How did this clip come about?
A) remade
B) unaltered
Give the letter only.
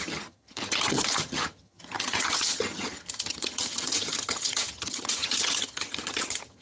A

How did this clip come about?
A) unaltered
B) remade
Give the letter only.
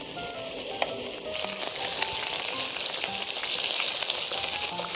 A